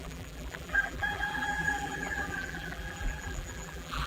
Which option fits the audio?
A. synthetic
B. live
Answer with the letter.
A